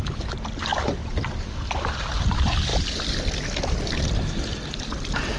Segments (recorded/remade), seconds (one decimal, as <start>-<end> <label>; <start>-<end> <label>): 0.0-5.4 recorded